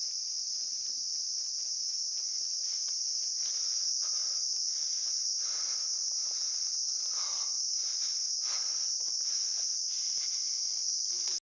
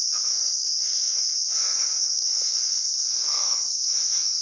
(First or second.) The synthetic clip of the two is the second